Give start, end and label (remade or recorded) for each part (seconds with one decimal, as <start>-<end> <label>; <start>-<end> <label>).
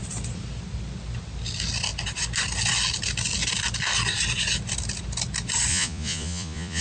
0.0-5.7 recorded; 5.7-6.8 remade